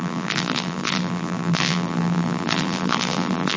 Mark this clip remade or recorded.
remade